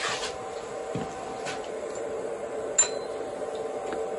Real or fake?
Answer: real